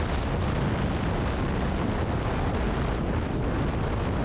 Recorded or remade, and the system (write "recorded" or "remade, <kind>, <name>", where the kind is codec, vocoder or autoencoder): recorded